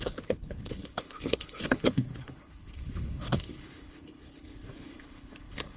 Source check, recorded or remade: remade